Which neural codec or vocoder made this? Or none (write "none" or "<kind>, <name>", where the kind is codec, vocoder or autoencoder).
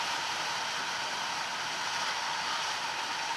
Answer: none